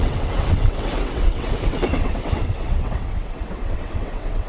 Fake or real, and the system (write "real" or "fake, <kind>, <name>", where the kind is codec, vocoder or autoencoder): fake, vocoder, WaveNeXt